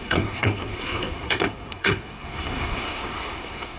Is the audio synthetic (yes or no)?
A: yes